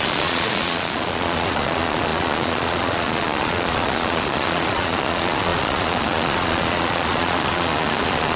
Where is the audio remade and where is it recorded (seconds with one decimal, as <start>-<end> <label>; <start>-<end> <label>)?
0.0-8.4 remade